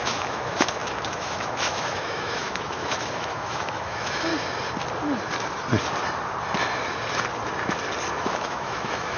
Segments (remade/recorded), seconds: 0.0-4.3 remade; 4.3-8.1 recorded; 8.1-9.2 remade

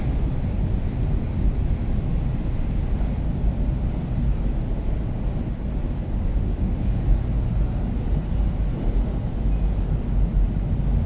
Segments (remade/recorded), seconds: 0.0-6.3 recorded; 6.3-7.0 remade; 7.0-11.1 recorded

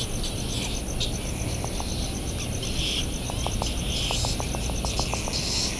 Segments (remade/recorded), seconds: 0.0-5.8 recorded